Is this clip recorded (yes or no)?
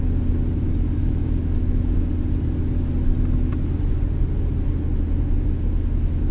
yes